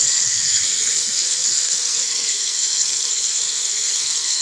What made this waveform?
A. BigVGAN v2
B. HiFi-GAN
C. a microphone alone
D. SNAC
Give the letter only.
D